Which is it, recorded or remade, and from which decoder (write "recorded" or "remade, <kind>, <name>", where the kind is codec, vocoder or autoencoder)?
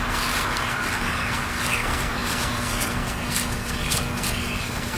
remade, codec, SNAC